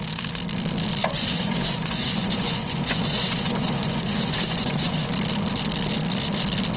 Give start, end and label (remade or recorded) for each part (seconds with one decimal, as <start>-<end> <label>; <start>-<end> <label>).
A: 0.0-1.0 recorded; 1.0-5.1 remade; 5.1-6.8 recorded